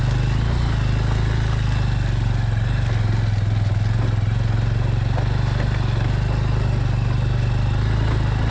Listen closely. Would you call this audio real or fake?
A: real